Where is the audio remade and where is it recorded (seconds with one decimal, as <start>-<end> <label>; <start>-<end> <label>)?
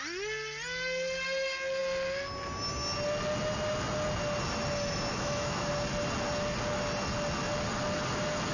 0.0-5.1 recorded; 5.1-5.7 remade; 5.7-8.5 recorded